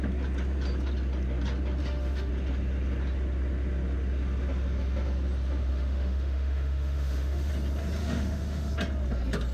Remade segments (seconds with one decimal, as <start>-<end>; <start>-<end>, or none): 1.8-2.3; 5.7-7.5; 8.0-8.7